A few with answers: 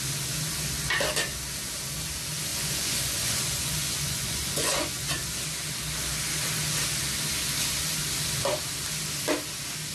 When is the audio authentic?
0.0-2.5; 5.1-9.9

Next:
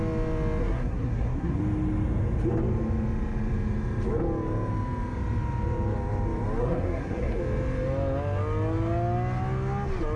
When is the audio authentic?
0.0-0.6; 1.6-6.6; 7.4-10.2

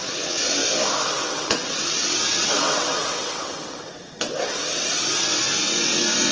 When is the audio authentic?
0.6-1.1